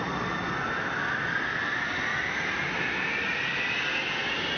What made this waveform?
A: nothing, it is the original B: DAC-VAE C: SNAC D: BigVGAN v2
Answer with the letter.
A